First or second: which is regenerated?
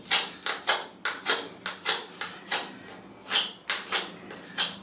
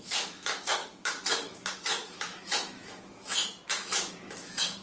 second